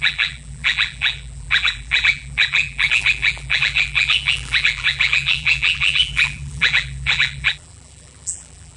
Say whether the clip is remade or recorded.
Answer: remade